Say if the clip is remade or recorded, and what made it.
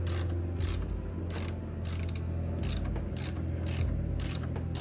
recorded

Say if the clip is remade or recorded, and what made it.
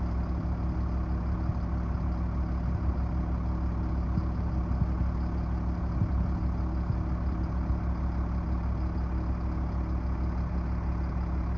recorded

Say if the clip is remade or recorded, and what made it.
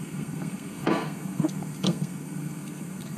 remade, codec, SNAC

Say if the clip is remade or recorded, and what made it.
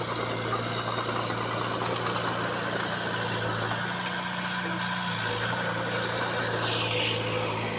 recorded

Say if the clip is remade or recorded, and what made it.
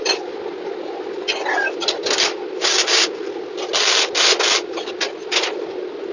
recorded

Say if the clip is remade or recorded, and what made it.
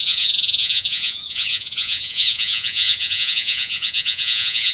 remade, vocoder, Vocos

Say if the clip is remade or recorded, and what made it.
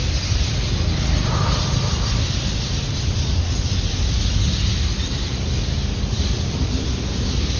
recorded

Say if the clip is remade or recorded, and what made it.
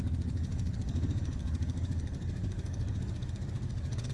remade, codec, DAC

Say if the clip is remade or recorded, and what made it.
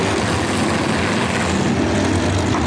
recorded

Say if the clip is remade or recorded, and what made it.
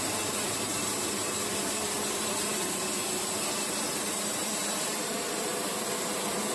remade, vocoder, BigVGAN v2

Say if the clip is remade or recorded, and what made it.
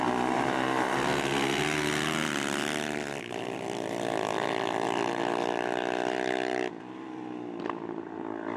remade, vocoder, BigVGAN v2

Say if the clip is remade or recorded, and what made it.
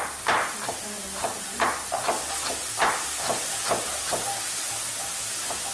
recorded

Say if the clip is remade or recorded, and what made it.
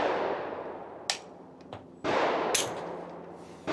recorded